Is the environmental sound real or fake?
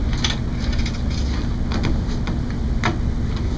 real